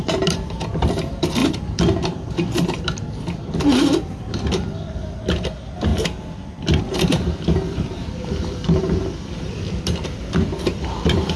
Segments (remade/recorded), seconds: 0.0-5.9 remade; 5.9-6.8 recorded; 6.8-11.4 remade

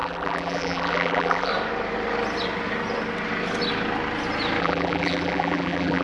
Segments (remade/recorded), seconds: 0.0-1.5 remade; 1.5-4.6 recorded; 4.6-6.0 remade